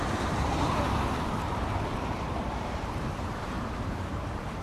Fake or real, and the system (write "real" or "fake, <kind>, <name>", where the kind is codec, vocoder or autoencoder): fake, vocoder, BigVGAN v2